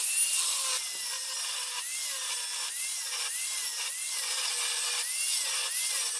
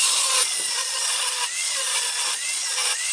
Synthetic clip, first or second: second